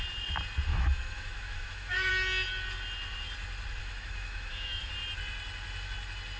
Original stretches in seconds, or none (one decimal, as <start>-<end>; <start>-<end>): 0.0-0.7; 2.1-3.8; 4.9-6.4